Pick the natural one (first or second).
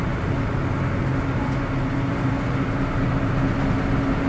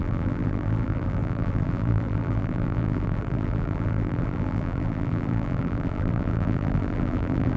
first